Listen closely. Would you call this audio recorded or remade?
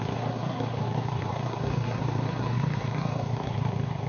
remade